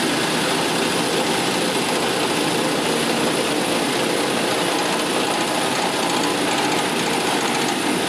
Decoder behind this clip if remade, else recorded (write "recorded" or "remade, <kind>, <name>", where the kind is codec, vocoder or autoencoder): recorded